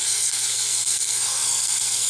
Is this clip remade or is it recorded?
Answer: remade